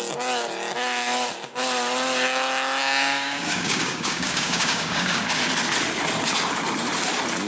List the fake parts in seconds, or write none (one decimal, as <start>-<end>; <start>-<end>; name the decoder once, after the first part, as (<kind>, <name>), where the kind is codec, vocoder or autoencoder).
2.8-5.2 (codec, DAC)